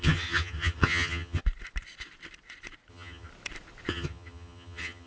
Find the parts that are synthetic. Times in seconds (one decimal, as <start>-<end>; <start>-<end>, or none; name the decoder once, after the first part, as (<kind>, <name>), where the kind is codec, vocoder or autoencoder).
0.0-1.4 (vocoder, HiFi-GAN); 2.9-3.3; 3.9-5.1